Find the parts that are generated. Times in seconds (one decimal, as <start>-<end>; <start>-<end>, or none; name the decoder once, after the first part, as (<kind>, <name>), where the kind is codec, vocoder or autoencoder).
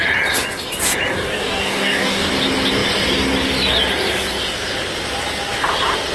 1.1-2.3 (codec, DAC)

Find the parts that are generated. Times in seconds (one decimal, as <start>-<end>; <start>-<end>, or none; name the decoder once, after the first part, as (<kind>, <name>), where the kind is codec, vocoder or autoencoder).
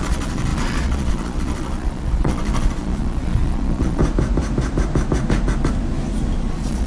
0.0-4.0 (vocoder, Vocos); 6.5-6.9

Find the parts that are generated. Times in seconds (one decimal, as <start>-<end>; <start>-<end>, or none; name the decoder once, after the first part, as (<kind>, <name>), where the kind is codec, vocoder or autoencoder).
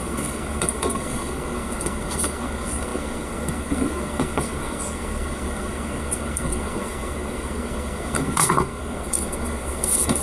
0.0-10.2 (codec, SNAC)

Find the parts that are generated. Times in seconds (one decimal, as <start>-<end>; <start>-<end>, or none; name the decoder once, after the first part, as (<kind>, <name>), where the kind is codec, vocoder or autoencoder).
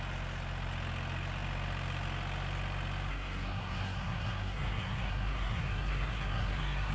3.1-6.9 (codec, SNAC)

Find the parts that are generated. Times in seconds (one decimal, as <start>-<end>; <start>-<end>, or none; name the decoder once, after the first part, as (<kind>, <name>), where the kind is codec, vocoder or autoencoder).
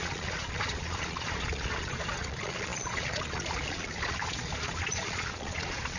0.0-6.0 (vocoder, Vocos)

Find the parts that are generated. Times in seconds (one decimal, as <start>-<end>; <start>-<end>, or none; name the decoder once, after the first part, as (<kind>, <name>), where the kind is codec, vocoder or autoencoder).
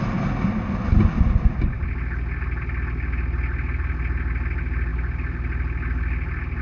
none